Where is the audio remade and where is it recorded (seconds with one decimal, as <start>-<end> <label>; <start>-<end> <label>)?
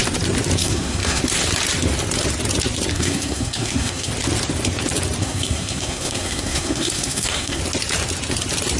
0.0-0.6 recorded; 0.6-1.2 remade; 1.2-2.9 recorded; 2.9-4.1 remade; 4.1-5.2 recorded; 5.2-7.6 remade; 7.6-8.8 recorded